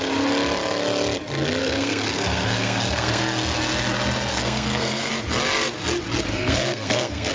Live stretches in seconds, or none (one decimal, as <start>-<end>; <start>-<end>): 0.0-1.6; 3.2-4.3; 5.1-6.3